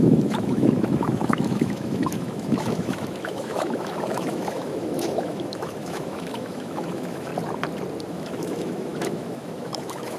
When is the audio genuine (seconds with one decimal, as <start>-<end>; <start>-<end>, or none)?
7.3-8.1